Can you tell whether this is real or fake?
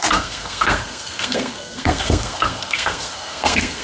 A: fake